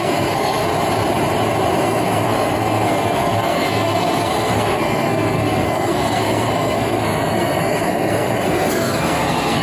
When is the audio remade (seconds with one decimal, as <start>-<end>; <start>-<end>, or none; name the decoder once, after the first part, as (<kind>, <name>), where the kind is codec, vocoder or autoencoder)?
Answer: 0.0-0.7 (codec, SNAC); 1.8-9.6